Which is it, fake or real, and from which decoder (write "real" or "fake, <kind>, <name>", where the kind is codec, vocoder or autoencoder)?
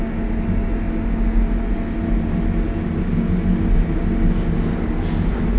real